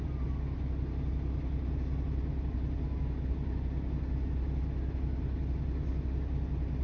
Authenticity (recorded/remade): recorded